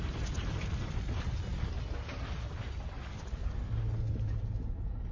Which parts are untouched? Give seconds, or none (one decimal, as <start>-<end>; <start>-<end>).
0.0-5.1